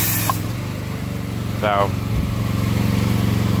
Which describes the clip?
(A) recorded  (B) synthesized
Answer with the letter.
A